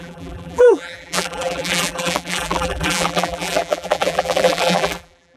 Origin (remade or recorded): remade